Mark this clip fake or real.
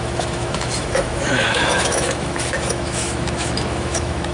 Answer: fake